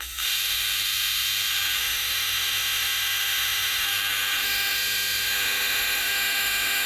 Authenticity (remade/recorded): remade